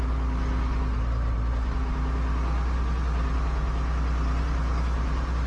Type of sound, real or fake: real